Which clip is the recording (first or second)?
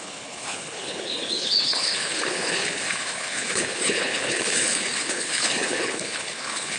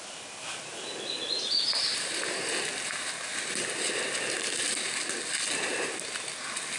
second